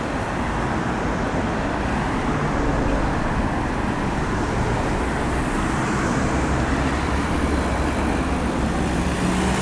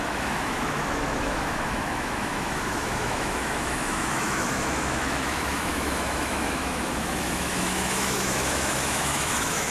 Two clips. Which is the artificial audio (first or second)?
second